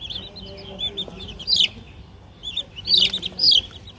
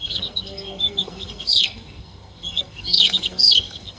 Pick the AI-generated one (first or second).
second